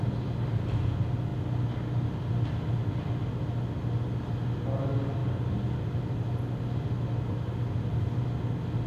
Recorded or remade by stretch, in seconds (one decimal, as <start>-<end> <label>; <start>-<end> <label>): 0.0-8.9 recorded